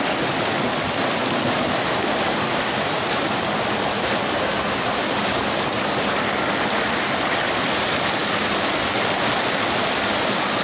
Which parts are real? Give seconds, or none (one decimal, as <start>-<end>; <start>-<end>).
0.0-10.6

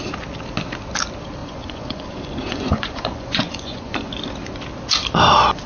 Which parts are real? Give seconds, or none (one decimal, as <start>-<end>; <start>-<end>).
0.0-1.4; 4.1-5.7